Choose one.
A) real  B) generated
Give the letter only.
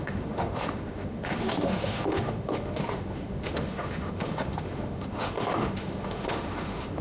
B